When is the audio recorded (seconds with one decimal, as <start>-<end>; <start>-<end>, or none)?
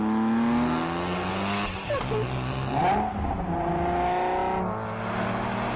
0.0-5.8